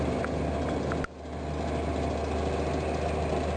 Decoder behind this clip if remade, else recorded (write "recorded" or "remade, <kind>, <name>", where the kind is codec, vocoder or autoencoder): recorded